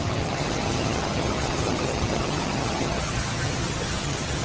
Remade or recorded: remade